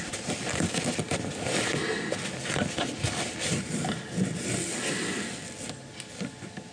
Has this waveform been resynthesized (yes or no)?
no